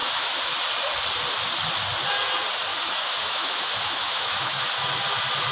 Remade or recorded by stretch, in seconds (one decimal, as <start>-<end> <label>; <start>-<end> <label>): 0.0-2.7 recorded; 2.7-4.8 remade; 4.8-5.5 recorded